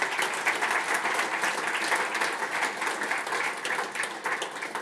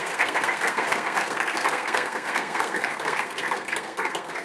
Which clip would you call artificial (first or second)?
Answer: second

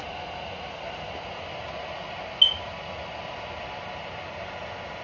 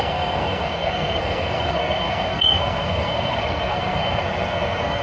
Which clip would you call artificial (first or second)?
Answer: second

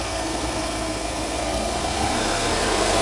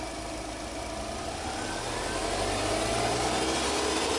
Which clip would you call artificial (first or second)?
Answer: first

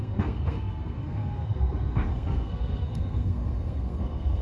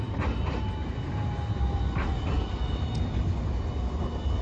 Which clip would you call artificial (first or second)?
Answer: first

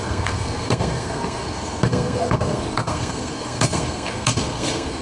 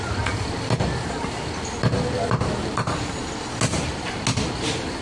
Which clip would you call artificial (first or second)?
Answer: first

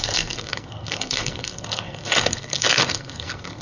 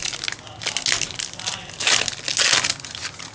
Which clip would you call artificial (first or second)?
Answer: first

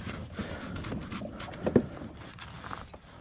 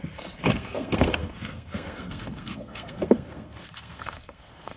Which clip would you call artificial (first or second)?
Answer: second